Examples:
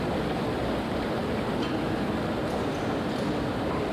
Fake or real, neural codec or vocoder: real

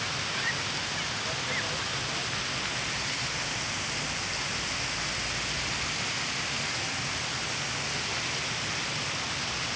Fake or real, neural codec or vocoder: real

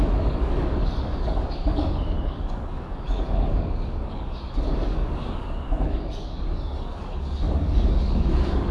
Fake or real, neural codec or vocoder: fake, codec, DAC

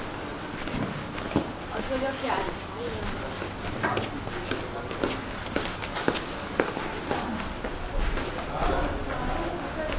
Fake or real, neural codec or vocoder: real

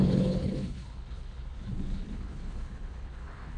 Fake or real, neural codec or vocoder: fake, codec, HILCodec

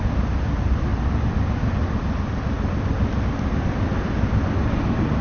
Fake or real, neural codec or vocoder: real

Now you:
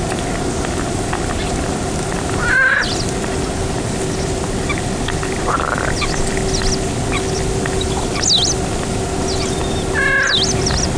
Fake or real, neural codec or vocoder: real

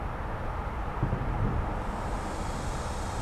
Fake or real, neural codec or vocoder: real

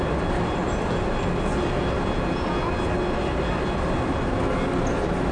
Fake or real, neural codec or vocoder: real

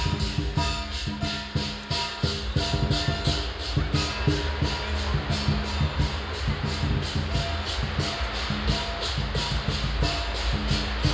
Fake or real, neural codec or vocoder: real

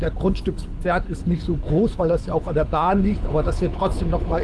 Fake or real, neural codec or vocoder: fake, codec, HILCodec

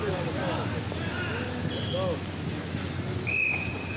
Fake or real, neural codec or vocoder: real